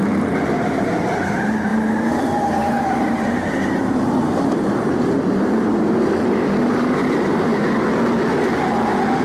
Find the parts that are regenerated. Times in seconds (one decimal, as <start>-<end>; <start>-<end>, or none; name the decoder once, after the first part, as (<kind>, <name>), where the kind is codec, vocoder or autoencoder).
0.0-7.5 (vocoder, BigVGAN v2)